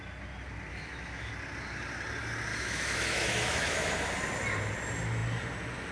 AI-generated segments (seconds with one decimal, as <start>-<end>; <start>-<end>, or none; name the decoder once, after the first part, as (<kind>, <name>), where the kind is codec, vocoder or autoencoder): 0.7-1.3 (autoencoder, DAC-VAE); 2.5-3.9

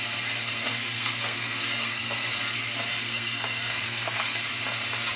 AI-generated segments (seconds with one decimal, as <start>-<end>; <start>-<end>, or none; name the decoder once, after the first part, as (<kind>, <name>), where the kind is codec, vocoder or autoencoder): 0.4-2.3 (codec, SNAC); 2.9-4.5

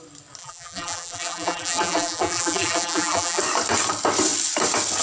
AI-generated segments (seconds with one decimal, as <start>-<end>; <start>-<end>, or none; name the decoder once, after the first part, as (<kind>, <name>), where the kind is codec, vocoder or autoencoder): 0.4-3.4 (vocoder, BigVGAN v2)

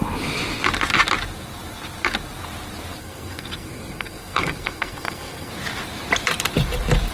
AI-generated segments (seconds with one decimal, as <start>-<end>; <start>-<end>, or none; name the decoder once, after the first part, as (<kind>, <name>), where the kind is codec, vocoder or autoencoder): 3.0-5.5 (codec, SNAC)

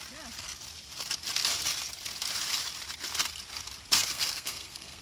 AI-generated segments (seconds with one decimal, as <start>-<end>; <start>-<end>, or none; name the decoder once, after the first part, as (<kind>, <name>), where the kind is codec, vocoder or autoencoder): 3.9-5.0 (codec, SNAC)